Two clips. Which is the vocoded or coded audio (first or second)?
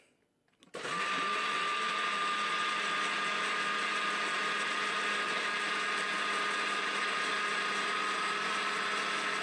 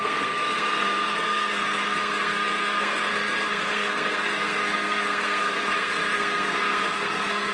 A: second